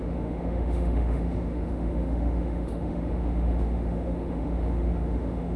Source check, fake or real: fake